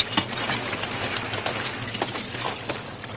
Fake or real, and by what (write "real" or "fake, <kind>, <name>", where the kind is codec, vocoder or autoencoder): real